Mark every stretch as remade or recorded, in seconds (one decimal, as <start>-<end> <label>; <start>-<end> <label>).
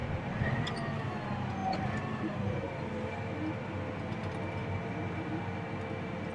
0.0-0.7 remade; 0.7-1.6 recorded; 1.6-2.8 remade; 2.8-4.6 recorded; 4.6-5.3 remade; 5.3-6.3 recorded